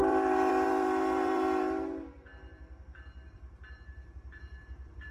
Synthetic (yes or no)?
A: yes